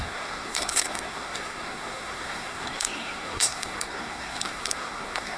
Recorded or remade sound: remade